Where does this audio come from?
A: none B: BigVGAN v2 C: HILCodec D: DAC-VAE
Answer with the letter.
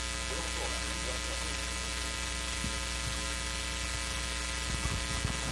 A